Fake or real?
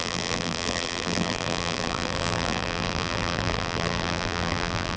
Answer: fake